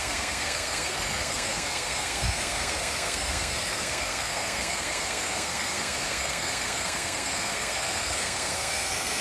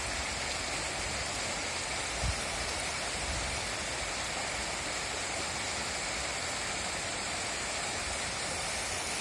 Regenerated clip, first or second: first